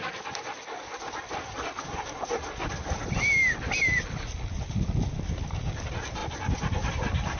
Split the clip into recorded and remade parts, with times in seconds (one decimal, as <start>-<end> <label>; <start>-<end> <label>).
0.0-7.4 recorded